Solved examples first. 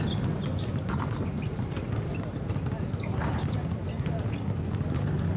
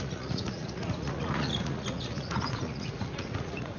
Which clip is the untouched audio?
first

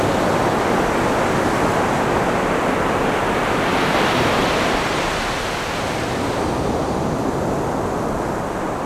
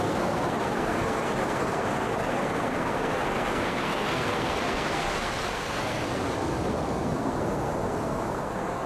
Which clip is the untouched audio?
first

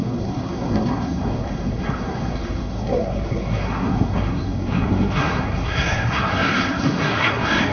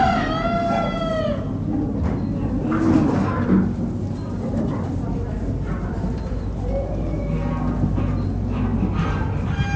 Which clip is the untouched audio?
second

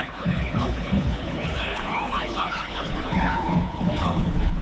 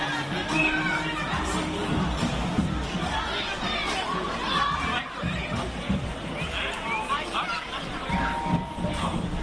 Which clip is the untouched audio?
second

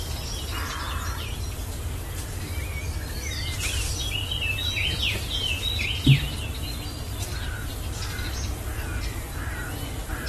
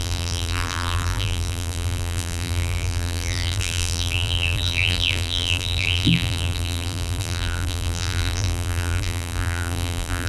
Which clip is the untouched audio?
first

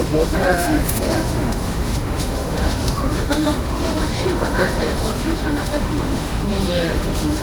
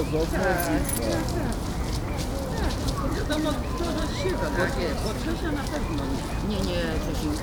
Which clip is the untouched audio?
second